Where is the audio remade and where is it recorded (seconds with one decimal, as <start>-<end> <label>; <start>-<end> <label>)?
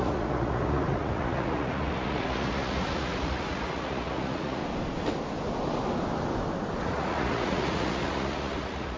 0.0-4.6 remade; 4.6-6.8 recorded; 6.8-9.0 remade